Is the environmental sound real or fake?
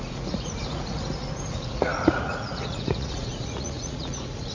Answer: fake